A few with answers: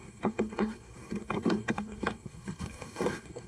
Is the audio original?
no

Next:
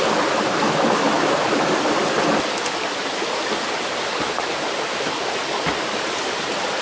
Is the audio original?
yes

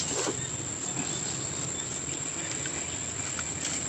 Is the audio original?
yes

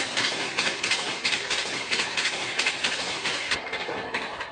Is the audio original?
no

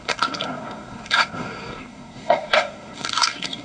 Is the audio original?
no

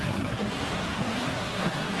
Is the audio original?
no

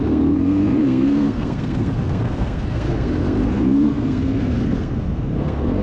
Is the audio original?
no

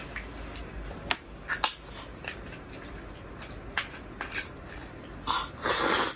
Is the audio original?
yes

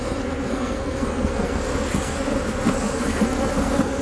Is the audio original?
no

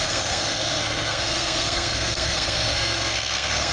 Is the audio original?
no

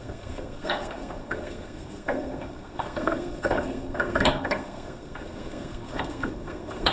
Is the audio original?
no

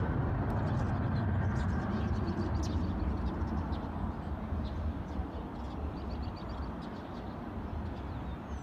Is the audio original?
yes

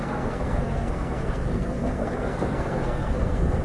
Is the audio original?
no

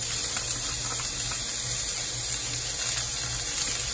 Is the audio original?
yes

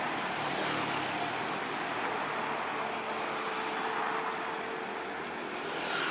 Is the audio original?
yes